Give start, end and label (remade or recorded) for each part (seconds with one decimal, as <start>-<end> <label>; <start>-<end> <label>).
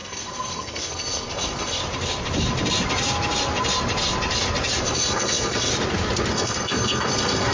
0.0-1.8 remade; 1.8-4.8 recorded; 4.8-5.7 remade; 5.7-6.3 recorded; 6.3-7.5 remade